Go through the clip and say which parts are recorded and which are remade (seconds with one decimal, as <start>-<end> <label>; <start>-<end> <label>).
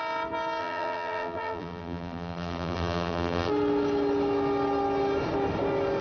0.0-0.6 recorded; 0.6-3.5 remade; 3.5-6.0 recorded